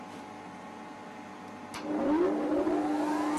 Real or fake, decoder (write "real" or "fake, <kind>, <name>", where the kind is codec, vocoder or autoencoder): real